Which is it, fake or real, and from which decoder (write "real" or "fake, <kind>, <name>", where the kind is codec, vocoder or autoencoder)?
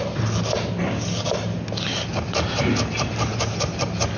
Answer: real